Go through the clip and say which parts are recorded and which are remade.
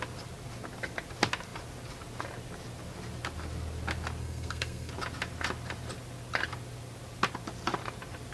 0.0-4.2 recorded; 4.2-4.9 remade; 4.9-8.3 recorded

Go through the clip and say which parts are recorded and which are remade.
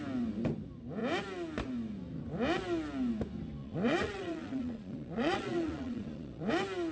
0.0-3.6 recorded; 3.6-6.5 remade; 6.5-6.9 recorded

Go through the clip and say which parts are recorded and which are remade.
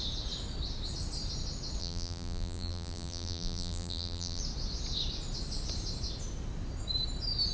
0.0-1.8 recorded; 1.8-4.4 remade; 4.4-7.5 recorded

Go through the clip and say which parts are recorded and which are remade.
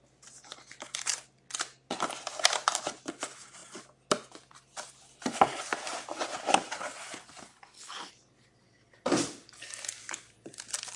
0.0-7.5 recorded; 7.5-8.1 remade; 8.1-11.0 recorded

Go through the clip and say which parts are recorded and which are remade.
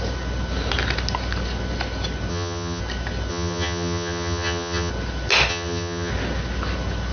0.0-2.3 recorded; 2.3-2.8 remade; 2.8-3.3 recorded; 3.3-4.9 remade; 4.9-5.5 recorded; 5.5-6.1 remade; 6.1-7.1 recorded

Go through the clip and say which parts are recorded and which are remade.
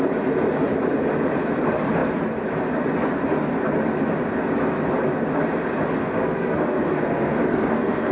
0.0-6.0 recorded; 6.0-8.1 remade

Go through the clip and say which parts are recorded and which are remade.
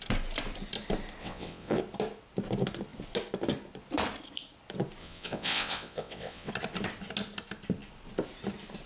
0.0-1.2 recorded; 1.2-1.8 remade; 1.8-5.0 recorded; 5.0-6.5 remade; 6.5-8.9 recorded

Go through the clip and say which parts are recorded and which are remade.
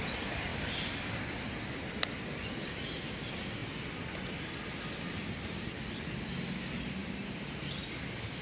0.0-7.0 recorded; 7.0-7.6 remade; 7.6-8.4 recorded